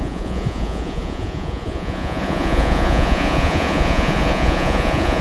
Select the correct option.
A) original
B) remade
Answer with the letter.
B